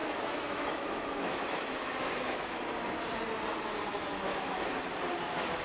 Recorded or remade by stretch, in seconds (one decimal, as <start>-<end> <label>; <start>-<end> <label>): 0.0-2.6 remade; 2.6-3.9 recorded; 3.9-4.6 remade; 4.6-5.6 recorded